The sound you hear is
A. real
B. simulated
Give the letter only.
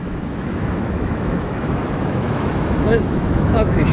B